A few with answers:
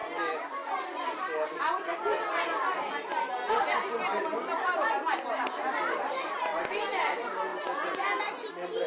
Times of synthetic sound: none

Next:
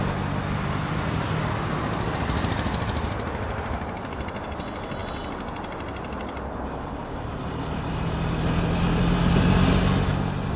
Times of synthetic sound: none

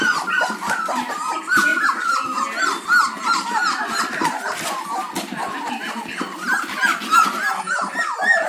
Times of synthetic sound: 0.0-1.7 (vocoder, BigVGAN v2); 5.7-8.5

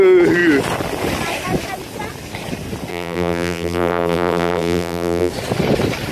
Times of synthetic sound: 2.9-5.3 (vocoder, BigVGAN v2)

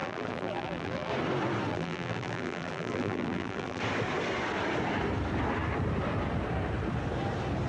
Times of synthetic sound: 0.0-1.1 (vocoder, BigVGAN v2); 1.7-3.8

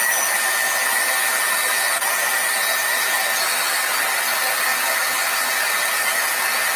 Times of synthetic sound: none